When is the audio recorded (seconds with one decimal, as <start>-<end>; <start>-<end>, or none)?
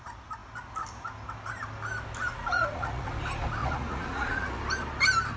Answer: 0.0-2.3; 3.1-3.6; 4.6-5.4